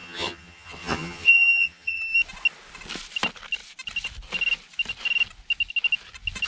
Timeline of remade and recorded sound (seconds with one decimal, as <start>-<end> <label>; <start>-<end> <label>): 0.0-2.0 remade; 2.0-6.5 recorded

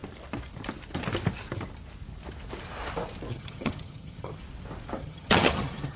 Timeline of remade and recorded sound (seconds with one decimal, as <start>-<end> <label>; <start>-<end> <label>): 0.0-3.3 recorded; 3.3-4.4 remade; 4.4-5.0 recorded; 5.0-6.0 remade

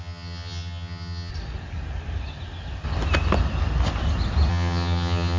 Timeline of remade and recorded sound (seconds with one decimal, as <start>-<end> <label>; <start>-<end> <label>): 0.0-1.3 remade; 1.3-4.5 recorded; 4.5-5.4 remade

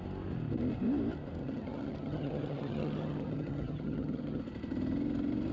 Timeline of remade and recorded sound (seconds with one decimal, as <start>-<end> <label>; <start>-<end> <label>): 0.0-1.4 recorded; 1.4-4.4 remade; 4.4-5.5 recorded

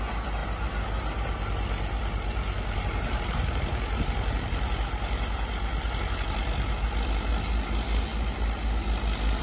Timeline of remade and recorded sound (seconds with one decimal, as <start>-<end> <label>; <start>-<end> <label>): 0.0-9.4 recorded

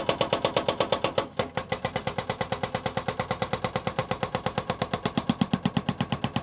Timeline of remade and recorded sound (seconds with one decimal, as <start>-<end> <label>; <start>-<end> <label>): 0.0-6.4 recorded

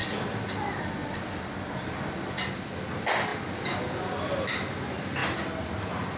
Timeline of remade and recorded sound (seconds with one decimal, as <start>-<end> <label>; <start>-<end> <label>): 0.0-6.2 recorded